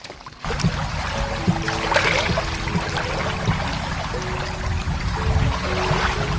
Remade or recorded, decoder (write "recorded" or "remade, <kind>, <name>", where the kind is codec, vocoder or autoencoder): recorded